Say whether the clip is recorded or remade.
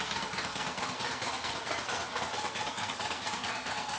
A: remade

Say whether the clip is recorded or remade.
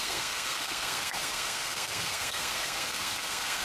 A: remade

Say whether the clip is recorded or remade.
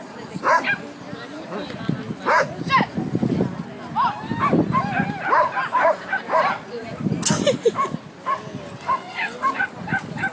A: recorded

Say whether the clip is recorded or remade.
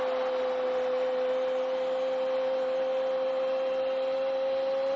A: recorded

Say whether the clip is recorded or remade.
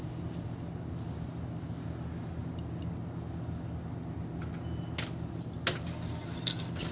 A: recorded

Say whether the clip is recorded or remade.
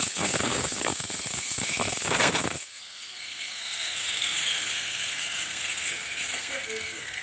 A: remade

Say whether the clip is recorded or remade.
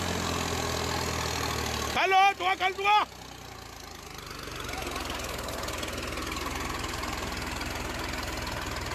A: recorded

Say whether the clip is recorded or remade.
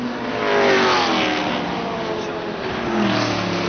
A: recorded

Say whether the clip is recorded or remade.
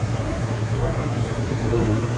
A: remade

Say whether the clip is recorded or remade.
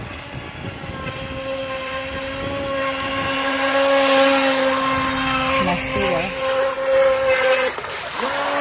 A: recorded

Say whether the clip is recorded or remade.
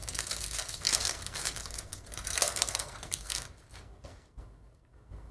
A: remade